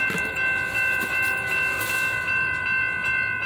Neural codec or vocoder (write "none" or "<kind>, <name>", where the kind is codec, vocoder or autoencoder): none